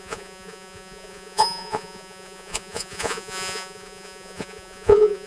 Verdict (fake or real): fake